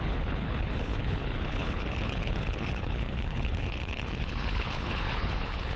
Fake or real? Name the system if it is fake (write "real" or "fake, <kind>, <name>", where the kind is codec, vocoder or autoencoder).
fake, codec, HILCodec